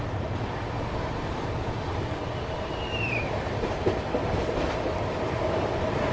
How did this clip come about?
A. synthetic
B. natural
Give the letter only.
B